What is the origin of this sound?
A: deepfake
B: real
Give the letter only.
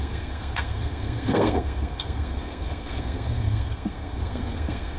A